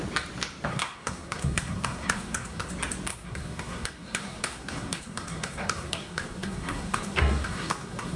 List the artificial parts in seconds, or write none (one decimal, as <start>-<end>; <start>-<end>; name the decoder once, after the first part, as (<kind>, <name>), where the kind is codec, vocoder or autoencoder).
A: 0.7-2.7 (codec, SNAC); 3.1-8.2

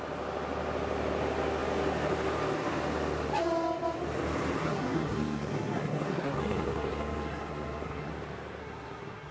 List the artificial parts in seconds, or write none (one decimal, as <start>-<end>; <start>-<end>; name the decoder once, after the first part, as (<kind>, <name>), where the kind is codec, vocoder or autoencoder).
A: 4.6-8.1 (codec, SNAC); 8.6-9.3

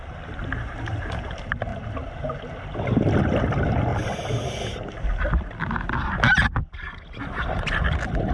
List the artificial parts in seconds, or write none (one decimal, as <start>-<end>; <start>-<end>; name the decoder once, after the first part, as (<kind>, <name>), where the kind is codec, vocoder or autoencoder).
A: none

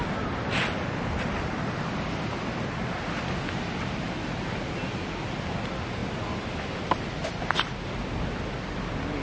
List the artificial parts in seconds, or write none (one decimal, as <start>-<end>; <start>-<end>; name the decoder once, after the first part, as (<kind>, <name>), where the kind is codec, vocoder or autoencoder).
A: none

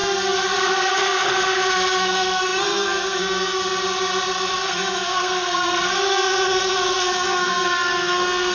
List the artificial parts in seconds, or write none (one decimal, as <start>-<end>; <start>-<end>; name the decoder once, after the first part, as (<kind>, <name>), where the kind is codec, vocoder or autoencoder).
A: 0.6-3.6 (codec, SNAC); 4.5-8.5

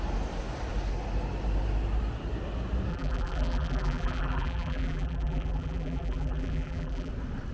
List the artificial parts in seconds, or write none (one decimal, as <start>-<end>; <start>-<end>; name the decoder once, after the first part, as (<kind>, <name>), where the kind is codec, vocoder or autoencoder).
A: 2.9-7.1 (vocoder, BigVGAN v2)

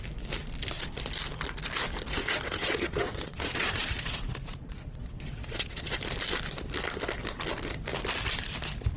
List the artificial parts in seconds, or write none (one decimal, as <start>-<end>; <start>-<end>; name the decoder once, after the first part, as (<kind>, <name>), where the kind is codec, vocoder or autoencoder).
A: 2.2-6.0 (vocoder, Vocos)